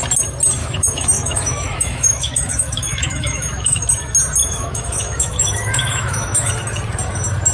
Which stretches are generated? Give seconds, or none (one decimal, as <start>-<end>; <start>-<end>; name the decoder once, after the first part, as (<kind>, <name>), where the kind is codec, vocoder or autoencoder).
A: 0.6-3.9 (autoencoder, DAC-VAE); 4.4-6.5